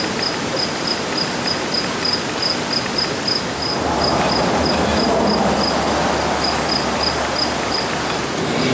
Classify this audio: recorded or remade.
recorded